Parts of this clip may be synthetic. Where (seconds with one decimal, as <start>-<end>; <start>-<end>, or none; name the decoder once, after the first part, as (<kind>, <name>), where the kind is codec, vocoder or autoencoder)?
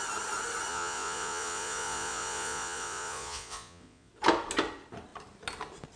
0.7-4.1 (vocoder, Vocos)